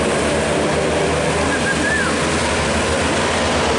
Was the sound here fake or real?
real